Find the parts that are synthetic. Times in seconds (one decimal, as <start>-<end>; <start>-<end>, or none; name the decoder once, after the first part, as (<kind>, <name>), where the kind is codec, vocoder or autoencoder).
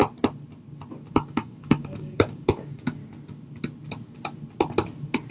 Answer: 1.1-3.0 (codec, DAC)